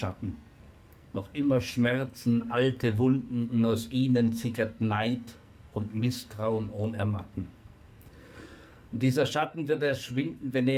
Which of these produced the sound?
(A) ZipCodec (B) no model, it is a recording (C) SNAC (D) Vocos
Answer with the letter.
C